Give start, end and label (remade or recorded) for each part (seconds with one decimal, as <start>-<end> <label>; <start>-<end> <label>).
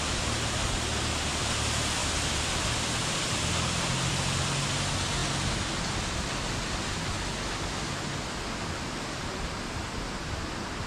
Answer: 0.0-10.9 recorded